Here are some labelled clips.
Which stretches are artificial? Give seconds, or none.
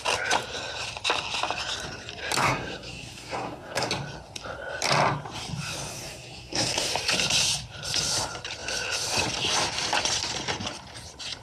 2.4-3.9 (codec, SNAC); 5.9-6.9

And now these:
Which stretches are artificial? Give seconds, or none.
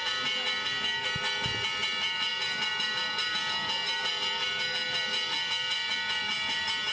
none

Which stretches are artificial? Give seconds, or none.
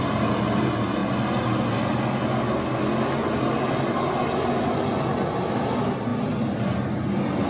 none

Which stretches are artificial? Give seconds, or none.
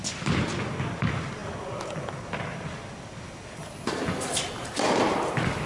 none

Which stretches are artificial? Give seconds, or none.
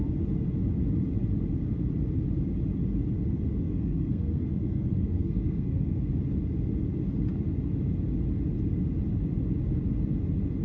3.6-6.1 (codec, SNAC)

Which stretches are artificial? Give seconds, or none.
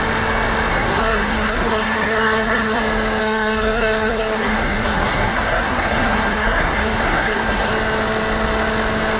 0.7-2.8 (codec, SNAC); 3.2-7.7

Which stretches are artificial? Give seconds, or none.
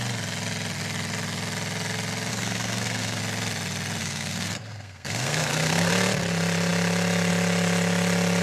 2.3-3.2 (codec, SNAC); 4.0-5.9